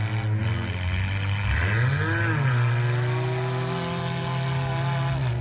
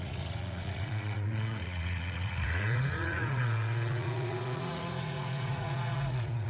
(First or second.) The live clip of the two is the first